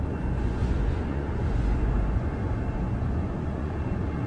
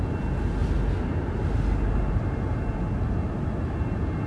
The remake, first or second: first